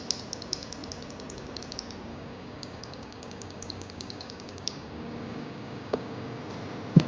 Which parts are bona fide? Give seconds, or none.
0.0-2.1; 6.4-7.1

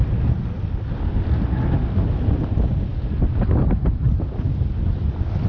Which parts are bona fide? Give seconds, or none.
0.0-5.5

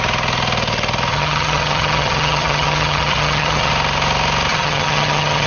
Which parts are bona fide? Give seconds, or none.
0.0-1.1; 3.7-4.5